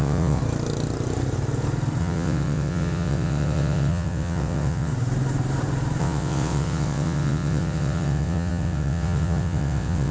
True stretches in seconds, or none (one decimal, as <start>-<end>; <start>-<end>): 0.4-2.0; 4.9-6.0